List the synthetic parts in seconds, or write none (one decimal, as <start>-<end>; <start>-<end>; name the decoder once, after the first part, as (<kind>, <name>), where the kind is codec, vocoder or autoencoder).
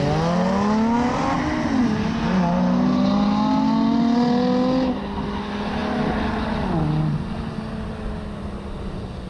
none